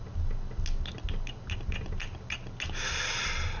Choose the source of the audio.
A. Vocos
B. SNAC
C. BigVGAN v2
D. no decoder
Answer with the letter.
D